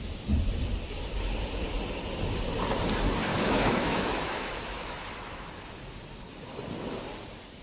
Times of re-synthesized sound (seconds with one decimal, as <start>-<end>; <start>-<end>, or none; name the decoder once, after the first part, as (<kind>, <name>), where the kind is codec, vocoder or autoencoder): 3.3-5.5 (autoencoder, DAC-VAE)